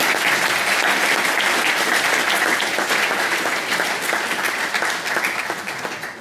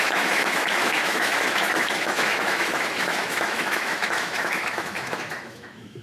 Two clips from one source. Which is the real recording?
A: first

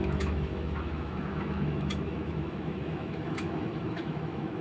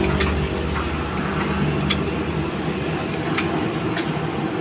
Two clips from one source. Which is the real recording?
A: second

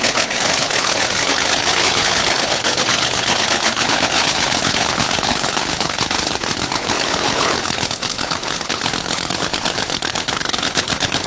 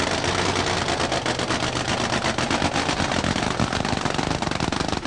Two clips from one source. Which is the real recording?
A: second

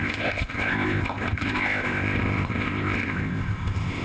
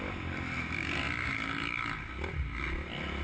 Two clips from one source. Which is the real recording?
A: second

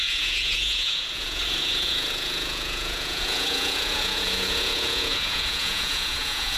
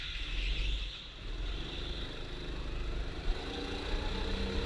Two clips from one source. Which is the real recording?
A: second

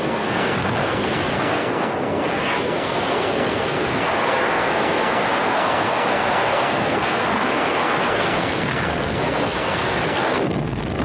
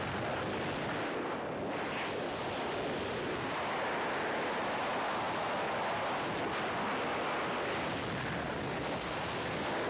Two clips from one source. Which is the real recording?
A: second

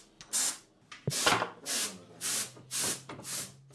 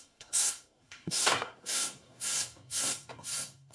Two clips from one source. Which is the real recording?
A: first